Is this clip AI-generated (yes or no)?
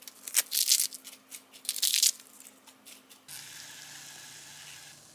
no